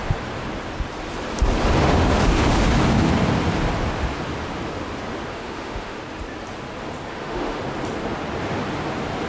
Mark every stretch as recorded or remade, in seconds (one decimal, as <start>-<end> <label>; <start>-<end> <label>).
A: 0.0-1.8 recorded; 1.8-2.6 remade; 2.6-5.3 recorded; 5.3-6.0 remade; 6.0-7.1 recorded; 7.1-7.6 remade; 7.6-9.3 recorded